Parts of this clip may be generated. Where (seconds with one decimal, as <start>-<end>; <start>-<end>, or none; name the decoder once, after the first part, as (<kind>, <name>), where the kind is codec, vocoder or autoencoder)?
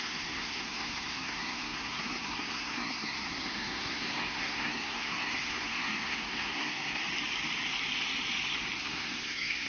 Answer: 0.0-7.0 (codec, SNAC); 8.8-9.7